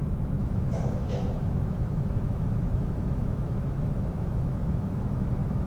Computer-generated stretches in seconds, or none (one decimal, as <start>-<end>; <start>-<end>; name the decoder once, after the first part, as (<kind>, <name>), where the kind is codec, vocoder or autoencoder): 0.0-5.7 (autoencoder, DAC-VAE)

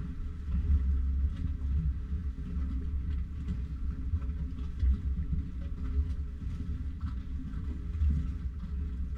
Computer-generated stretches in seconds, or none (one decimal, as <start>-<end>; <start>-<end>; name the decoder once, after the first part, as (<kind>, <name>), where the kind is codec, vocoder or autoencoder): none

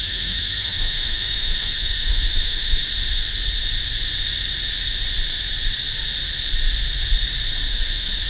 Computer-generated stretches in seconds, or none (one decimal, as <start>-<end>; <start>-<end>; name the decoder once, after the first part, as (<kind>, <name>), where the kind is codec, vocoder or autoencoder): 0.0-2.8 (autoencoder, DAC-VAE); 7.7-8.3

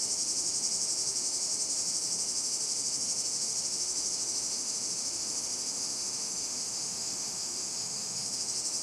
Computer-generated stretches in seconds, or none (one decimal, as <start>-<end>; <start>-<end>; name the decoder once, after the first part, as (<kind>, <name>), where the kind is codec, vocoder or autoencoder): 0.0-8.8 (autoencoder, DAC-VAE)